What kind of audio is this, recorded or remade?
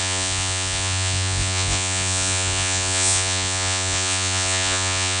remade